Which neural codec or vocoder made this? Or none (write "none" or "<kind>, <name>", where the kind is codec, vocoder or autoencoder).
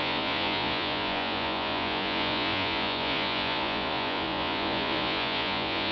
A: vocoder, Vocos